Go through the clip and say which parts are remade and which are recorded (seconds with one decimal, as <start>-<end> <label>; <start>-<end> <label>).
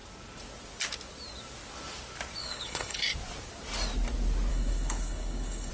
0.0-2.4 recorded; 2.4-3.0 remade; 3.0-4.5 recorded; 4.5-5.7 remade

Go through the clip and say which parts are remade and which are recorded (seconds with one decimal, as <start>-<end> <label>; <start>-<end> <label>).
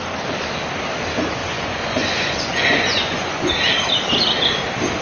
0.0-1.4 recorded; 1.4-3.5 remade; 3.5-5.0 recorded